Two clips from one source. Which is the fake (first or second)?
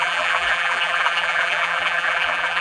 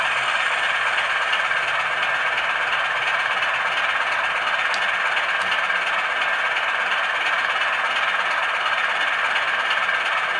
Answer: first